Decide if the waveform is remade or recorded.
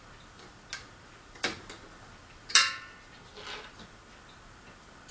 recorded